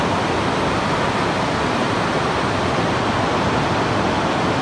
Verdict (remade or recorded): recorded